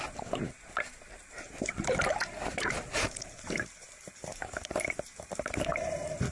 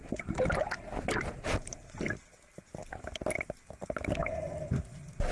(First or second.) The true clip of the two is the second